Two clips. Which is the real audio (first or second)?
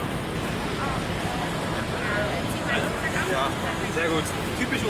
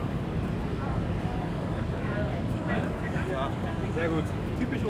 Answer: first